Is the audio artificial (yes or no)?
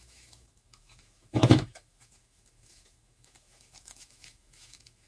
yes